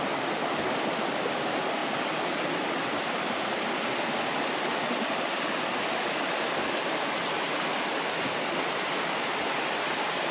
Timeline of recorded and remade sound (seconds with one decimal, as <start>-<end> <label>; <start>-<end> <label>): 0.0-10.3 recorded